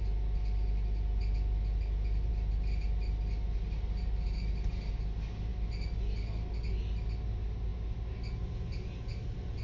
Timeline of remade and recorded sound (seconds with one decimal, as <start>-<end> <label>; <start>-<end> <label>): 0.0-9.6 recorded